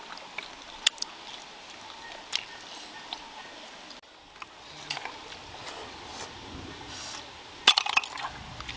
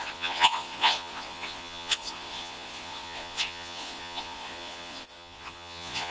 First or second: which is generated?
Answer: second